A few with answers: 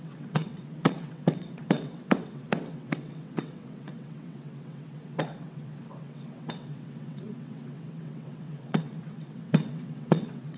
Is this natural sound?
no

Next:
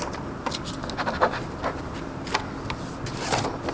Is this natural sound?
yes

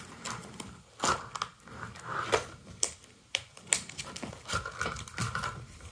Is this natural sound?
yes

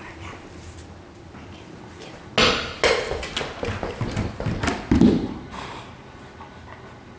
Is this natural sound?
yes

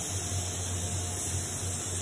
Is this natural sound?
yes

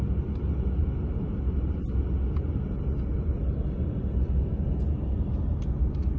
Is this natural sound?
yes